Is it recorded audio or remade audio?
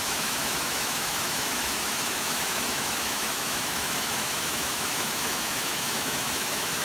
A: remade